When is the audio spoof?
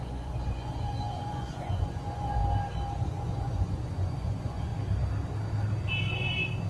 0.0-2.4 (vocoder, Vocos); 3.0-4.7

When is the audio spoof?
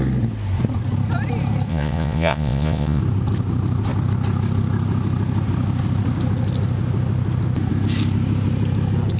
1.7-3.0 (vocoder, Vocos)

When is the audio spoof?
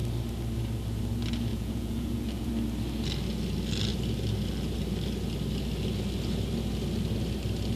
1.5-2.5 (vocoder, Vocos)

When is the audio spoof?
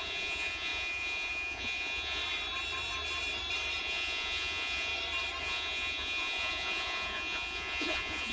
0.0-2.2 (vocoder, Vocos); 3.8-4.9; 5.4-8.3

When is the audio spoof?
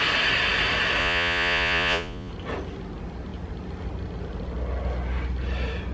1.0-2.3 (vocoder, Vocos)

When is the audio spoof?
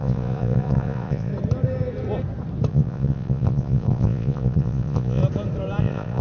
0.0-1.3 (vocoder, Vocos); 2.7-5.2; 5.8-6.2